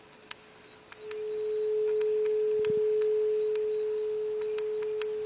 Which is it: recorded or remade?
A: recorded